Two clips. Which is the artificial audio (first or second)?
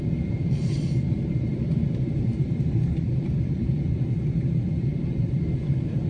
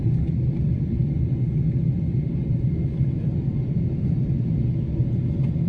first